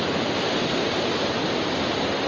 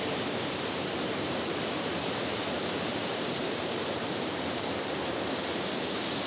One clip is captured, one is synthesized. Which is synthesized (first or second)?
second